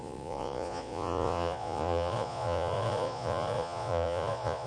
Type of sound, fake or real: fake